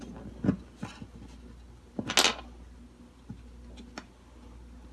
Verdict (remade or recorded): recorded